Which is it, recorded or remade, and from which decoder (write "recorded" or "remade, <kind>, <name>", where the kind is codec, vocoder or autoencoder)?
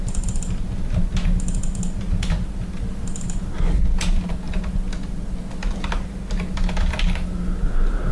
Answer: recorded